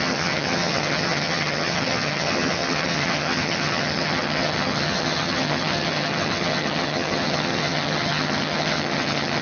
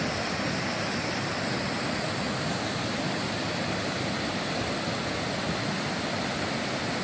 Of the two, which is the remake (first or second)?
first